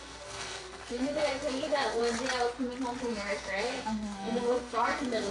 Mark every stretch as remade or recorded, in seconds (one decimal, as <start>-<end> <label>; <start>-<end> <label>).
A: 0.0-2.0 remade; 2.0-3.0 recorded; 3.0-5.3 remade